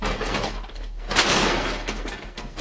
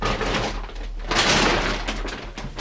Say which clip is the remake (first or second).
first